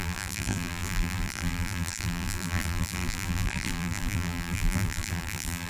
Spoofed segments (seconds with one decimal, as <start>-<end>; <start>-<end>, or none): 0.0-5.7

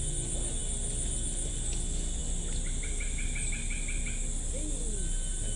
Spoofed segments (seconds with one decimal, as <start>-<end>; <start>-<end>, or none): none

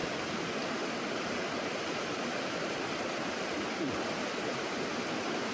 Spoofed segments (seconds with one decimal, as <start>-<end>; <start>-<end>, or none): 3.3-5.5

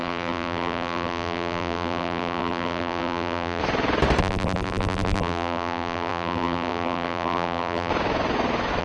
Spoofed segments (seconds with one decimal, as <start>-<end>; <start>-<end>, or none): 0.0-3.6; 4.2-7.9

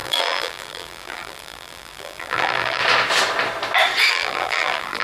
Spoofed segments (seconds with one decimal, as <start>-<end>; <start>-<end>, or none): 0.0-2.8; 4.1-5.0

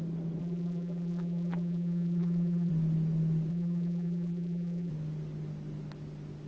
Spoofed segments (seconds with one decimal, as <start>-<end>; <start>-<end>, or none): 0.4-2.7; 3.5-4.9

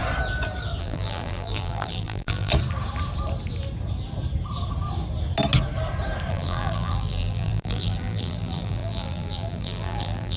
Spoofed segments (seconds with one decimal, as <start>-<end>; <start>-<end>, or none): 0.8-2.5; 6.3-10.4